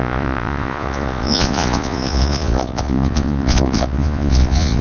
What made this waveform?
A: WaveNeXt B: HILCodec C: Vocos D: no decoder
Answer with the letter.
C